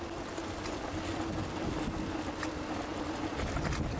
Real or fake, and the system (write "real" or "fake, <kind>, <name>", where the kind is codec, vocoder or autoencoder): real